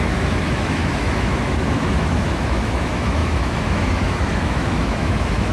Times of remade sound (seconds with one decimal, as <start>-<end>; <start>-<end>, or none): 0.0-5.5